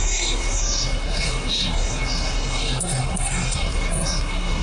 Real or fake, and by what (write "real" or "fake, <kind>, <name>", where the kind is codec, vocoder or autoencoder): fake, codec, SNAC